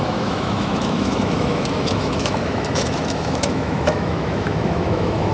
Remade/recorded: remade